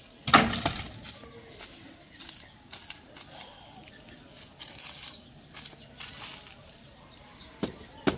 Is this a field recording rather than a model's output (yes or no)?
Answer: yes